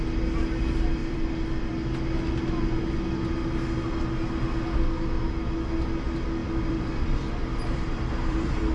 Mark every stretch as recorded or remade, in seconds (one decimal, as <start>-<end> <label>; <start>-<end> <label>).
0.0-1.0 recorded; 1.0-1.7 remade; 1.7-6.4 recorded; 6.4-8.7 remade